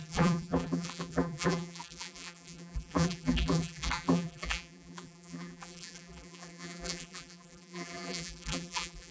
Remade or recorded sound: remade